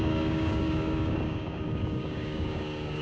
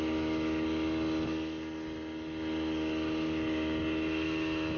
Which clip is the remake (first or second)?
first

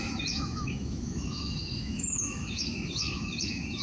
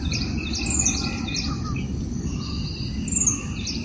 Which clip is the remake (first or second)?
first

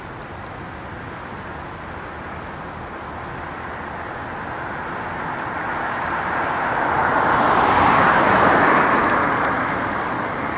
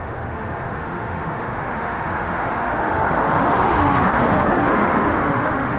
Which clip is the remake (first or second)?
second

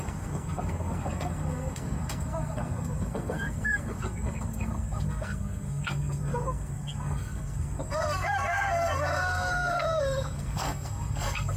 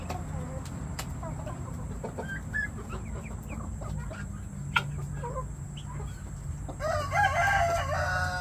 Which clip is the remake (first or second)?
first